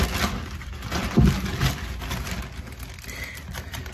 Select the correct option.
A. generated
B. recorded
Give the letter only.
B